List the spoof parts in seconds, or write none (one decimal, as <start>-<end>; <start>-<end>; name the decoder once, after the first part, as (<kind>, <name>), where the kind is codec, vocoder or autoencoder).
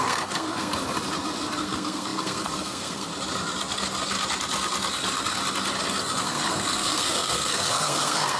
0.0-0.7 (codec, SNAC); 1.6-3.1; 6.2-8.4